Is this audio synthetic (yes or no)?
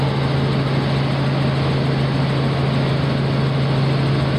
no